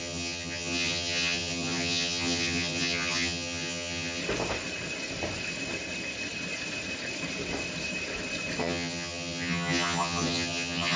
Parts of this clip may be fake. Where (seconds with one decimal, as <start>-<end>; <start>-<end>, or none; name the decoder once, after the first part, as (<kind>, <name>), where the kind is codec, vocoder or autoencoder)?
0.0-4.2 (vocoder, HiFi-GAN); 8.6-11.0